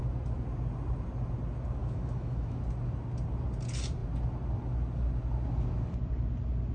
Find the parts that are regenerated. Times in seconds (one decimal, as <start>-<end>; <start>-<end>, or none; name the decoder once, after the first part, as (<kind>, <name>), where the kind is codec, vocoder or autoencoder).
1.8-2.6 (autoencoder, DAC-VAE)